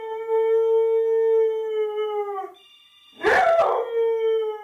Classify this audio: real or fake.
real